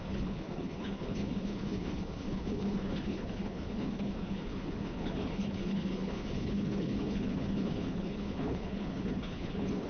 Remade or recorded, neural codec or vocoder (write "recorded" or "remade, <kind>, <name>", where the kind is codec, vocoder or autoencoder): remade, codec, HILCodec